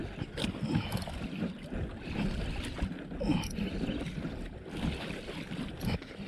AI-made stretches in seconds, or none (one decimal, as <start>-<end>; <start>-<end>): 3.7-6.3